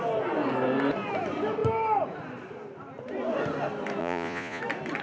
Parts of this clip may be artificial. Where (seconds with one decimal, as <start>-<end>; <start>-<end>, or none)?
4.0-4.6